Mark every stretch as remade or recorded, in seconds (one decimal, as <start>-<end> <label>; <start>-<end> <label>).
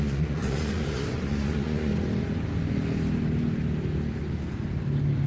0.0-1.9 remade; 1.9-5.3 recorded